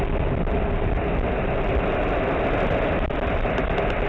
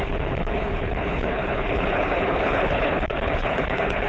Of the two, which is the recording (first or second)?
first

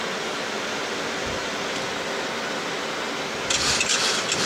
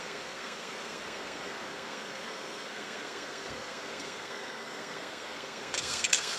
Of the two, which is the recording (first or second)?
first